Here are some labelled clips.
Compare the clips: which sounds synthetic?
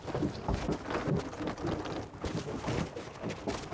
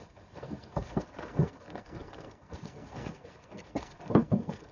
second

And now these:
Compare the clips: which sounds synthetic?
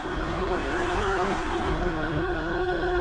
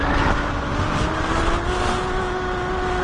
first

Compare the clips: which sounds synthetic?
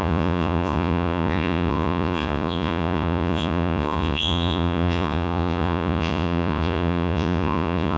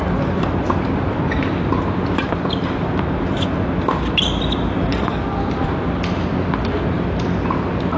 first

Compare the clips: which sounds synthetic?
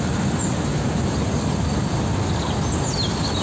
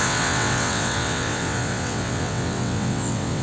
second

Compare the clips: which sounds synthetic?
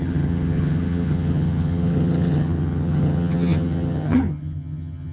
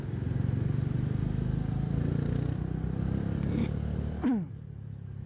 first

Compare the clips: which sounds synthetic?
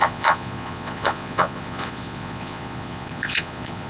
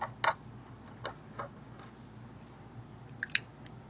first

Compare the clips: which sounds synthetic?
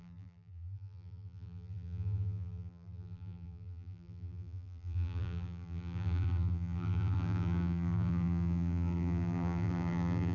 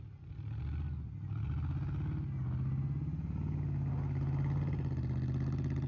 first